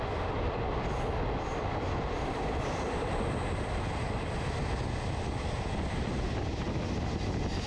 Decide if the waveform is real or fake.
real